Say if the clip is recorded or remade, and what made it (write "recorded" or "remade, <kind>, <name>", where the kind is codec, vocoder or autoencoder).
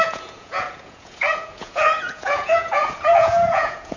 remade, vocoder, Vocos